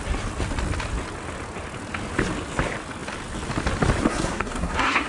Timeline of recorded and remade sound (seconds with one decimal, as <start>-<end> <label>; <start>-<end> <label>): 0.0-4.1 recorded; 4.1-5.1 remade